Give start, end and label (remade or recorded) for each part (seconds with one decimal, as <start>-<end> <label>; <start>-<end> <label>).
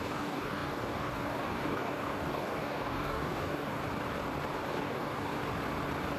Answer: 0.0-3.8 remade; 3.8-4.7 recorded; 4.7-5.4 remade; 5.4-6.2 recorded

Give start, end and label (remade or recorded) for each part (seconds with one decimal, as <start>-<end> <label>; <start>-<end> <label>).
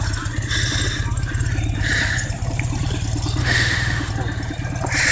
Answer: 0.0-3.4 recorded; 3.4-4.1 remade; 4.1-5.1 recorded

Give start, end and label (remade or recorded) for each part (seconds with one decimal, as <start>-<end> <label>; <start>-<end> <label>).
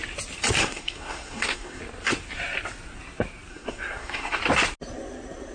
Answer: 0.0-0.6 recorded; 0.6-1.8 remade; 1.8-3.5 recorded; 3.5-4.4 remade; 4.4-5.5 recorded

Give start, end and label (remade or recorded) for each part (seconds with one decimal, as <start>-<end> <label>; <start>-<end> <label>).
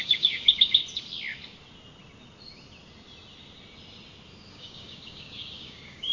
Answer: 0.0-0.8 remade; 0.8-4.5 recorded; 4.5-6.1 remade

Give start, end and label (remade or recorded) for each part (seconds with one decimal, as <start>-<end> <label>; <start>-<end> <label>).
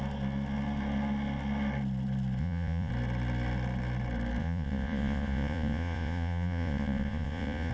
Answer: 0.0-2.4 recorded; 2.4-2.9 remade; 2.9-4.4 recorded; 4.4-7.7 remade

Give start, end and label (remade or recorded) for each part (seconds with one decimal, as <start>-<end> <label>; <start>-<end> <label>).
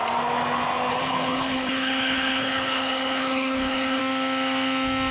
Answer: 0.0-0.9 recorded; 0.9-4.0 remade; 4.0-5.1 recorded